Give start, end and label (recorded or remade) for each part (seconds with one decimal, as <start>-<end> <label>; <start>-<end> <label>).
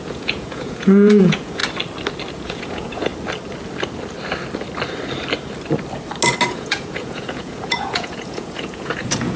0.0-1.6 remade; 1.6-2.3 recorded; 2.3-3.1 remade; 3.1-6.5 recorded; 6.5-9.4 remade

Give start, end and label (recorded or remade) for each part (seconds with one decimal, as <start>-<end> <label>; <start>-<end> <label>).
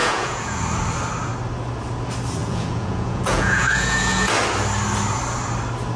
0.0-0.6 remade; 0.6-2.4 recorded; 2.4-4.3 remade; 4.3-6.0 recorded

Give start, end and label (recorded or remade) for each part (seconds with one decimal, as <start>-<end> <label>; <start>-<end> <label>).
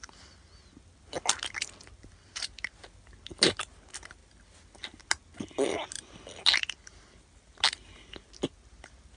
0.0-9.2 recorded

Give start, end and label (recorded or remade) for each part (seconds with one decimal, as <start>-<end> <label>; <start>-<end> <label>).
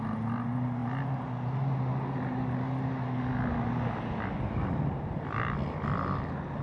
0.0-6.6 recorded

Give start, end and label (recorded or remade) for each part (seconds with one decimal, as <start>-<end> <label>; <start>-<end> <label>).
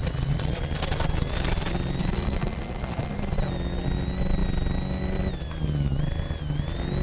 0.0-0.6 remade; 0.6-2.0 recorded; 2.0-3.1 remade; 3.1-7.0 recorded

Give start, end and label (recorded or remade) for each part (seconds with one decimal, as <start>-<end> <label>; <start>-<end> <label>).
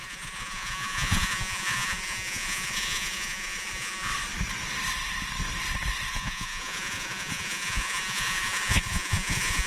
0.0-4.1 remade; 4.1-6.1 recorded; 6.1-9.7 remade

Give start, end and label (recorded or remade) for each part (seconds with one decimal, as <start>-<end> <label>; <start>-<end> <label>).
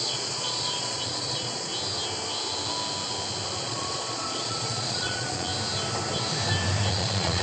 0.0-1.7 remade; 1.7-3.6 recorded; 3.6-5.5 remade; 5.5-6.9 recorded; 6.9-7.4 remade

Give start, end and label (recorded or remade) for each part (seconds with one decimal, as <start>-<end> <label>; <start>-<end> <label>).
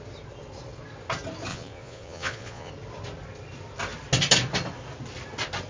0.0-1.5 recorded; 1.5-2.7 remade; 2.7-5.7 recorded